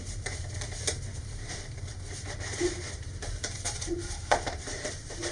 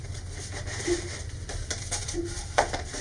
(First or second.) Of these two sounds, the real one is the second